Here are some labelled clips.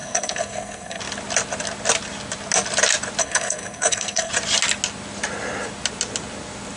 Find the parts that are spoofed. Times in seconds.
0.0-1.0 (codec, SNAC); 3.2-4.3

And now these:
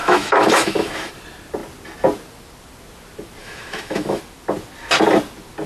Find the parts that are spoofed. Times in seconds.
0.0-1.1 (autoencoder, DAC-VAE); 3.4-4.2